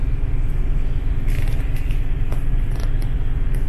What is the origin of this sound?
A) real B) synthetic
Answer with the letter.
B